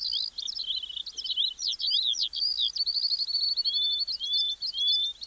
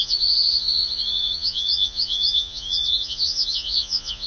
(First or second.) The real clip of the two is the first